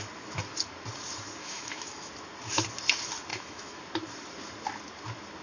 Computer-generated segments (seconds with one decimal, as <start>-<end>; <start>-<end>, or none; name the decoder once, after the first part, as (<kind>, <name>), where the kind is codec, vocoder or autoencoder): 1.4-2.1 (autoencoder, DAC-VAE); 3.3-3.8